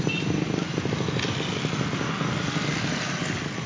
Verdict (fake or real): real